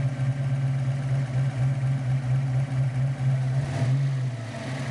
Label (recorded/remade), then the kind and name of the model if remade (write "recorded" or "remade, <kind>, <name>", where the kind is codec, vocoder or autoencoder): recorded